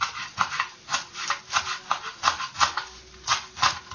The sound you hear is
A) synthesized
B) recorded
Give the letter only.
B